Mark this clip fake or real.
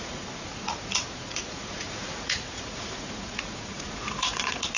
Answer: fake